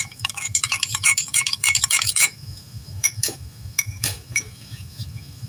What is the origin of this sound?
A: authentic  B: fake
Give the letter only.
B